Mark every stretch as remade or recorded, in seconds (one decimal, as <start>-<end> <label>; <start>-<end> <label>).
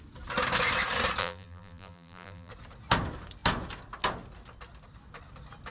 0.0-1.2 recorded; 1.2-2.5 remade; 2.5-5.7 recorded